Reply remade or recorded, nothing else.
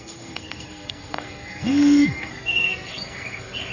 remade